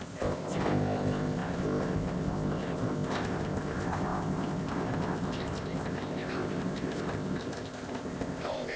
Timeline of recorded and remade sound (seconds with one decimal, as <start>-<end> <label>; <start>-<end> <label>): 0.0-8.8 remade

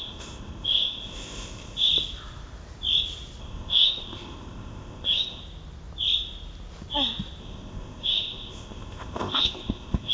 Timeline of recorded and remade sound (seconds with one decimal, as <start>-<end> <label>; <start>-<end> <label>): 0.0-1.9 remade; 1.9-3.4 recorded; 3.4-5.4 remade; 5.4-7.4 recorded; 7.4-10.1 remade

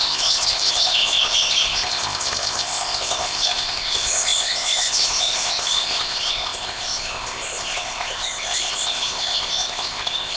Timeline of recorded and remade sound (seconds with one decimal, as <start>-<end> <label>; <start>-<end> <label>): 0.0-10.4 remade

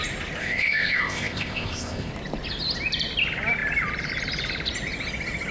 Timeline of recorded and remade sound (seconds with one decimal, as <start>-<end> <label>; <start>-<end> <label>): 0.0-0.4 recorded; 0.4-2.1 remade; 2.1-5.5 recorded

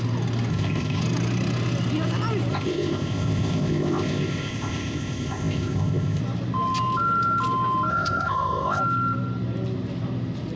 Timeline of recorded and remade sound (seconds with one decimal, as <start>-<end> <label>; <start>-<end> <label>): 0.0-0.5 recorded; 0.5-1.0 remade; 1.0-2.5 recorded; 2.5-6.2 remade; 6.2-7.9 recorded; 7.9-8.8 remade; 8.8-10.6 recorded

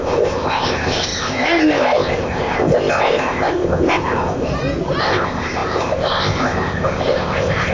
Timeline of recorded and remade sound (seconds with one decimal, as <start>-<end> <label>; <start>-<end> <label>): 0.0-4.5 remade; 4.5-5.0 recorded; 5.0-7.7 remade